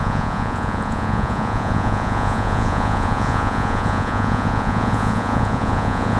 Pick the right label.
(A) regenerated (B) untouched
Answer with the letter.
A